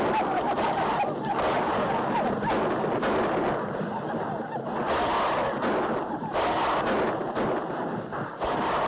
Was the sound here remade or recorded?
recorded